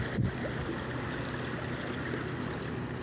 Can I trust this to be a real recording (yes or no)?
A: yes